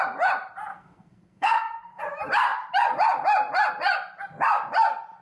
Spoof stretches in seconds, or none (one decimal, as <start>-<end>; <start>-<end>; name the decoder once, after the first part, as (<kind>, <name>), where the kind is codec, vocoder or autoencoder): 0.7-2.0 (codec, SNAC)